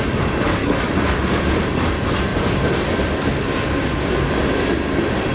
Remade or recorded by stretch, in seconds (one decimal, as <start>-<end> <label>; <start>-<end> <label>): 0.0-0.6 recorded; 0.6-1.4 remade; 1.4-5.3 recorded